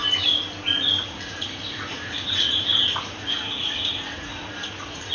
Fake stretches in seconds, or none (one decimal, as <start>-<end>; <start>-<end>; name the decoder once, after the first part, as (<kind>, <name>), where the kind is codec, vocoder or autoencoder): 1.0-5.1 (vocoder, Vocos)